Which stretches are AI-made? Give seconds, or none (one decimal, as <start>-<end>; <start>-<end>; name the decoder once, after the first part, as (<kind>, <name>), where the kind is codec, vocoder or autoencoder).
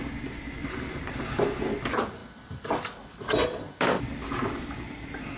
0.6-1.2 (vocoder, BigVGAN v2); 4.4-5.4